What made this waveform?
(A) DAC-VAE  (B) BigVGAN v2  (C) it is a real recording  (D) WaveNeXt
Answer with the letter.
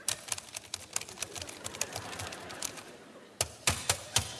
C